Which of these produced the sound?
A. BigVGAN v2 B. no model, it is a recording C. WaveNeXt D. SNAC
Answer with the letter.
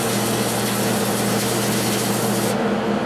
B